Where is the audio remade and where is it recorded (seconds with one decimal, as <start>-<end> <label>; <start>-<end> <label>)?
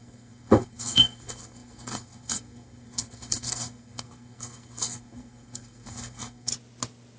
0.0-6.5 remade; 6.5-7.2 recorded